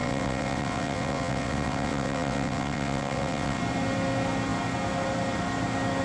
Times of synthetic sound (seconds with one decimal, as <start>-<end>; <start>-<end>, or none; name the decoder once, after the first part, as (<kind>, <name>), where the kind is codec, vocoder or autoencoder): 0.0-3.6 (vocoder, WaveNeXt)